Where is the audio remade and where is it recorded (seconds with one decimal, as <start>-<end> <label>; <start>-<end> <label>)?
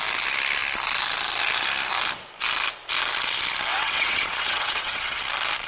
0.0-3.7 recorded; 3.7-5.2 remade; 5.2-5.7 recorded